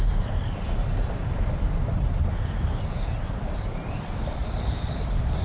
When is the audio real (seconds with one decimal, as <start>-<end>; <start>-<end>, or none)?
0.0-0.8; 1.5-4.4; 5.0-5.4